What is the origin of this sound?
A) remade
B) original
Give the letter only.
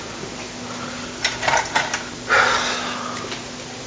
B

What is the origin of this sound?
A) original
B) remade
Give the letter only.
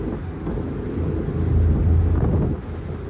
A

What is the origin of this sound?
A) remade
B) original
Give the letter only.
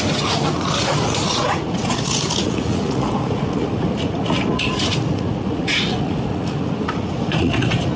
A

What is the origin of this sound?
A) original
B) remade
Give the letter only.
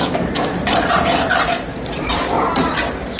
A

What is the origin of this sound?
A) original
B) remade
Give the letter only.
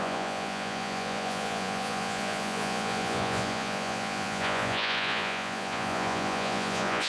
B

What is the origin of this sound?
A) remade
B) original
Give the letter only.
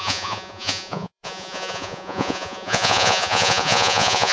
A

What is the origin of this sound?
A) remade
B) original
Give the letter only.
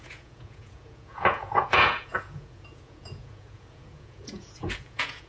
A